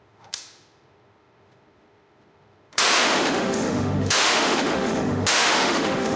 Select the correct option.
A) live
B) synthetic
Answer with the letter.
B